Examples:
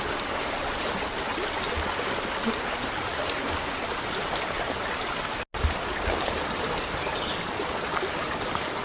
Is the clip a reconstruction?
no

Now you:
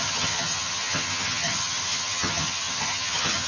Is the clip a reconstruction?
yes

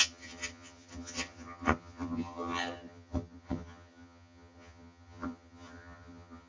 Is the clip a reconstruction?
yes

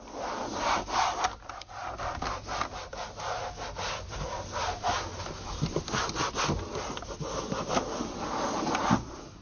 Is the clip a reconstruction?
no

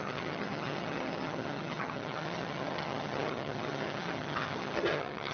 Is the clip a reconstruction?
yes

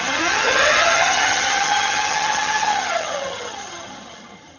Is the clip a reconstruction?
yes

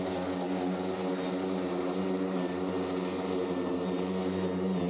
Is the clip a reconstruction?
no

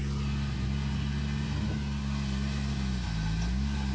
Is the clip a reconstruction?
no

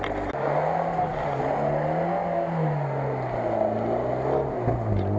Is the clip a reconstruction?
no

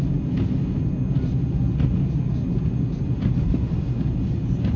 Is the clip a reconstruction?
no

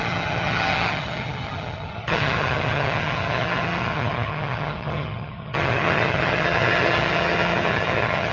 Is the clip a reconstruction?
yes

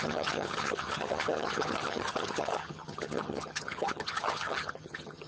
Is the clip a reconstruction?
yes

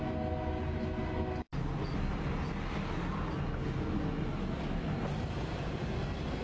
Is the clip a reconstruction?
no